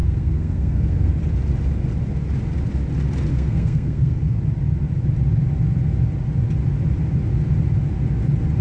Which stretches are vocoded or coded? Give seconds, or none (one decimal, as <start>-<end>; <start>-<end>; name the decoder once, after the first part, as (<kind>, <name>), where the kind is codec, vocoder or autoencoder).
0.0-1.1 (codec, SNAC); 3.3-4.4